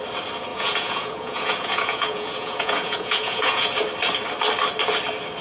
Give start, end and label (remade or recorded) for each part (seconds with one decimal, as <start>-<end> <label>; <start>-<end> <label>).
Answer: 0.0-0.5 recorded; 0.5-3.7 remade; 3.7-5.4 recorded